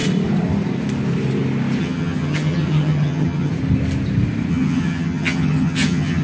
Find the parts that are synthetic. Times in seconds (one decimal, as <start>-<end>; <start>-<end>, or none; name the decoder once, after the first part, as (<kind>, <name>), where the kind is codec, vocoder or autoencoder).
1.8-3.5 (vocoder, HiFi-GAN); 4.5-6.2

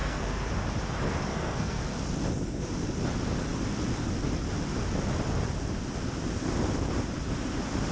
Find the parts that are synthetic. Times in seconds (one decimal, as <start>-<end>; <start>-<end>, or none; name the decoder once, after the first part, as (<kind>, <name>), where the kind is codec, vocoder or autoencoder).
0.0-0.5 (codec, SNAC); 1.3-1.8